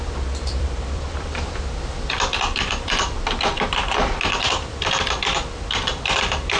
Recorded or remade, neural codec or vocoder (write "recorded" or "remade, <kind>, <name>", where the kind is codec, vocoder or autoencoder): remade, vocoder, BigVGAN v2